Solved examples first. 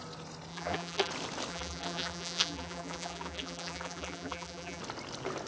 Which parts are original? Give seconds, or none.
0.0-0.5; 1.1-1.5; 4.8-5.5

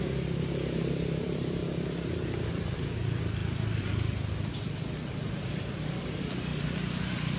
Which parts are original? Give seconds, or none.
1.6-2.5